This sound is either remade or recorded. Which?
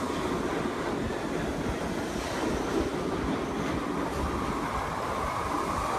recorded